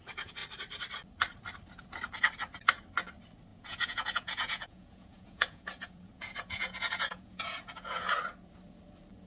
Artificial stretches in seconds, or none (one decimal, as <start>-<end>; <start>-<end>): 3.5-8.1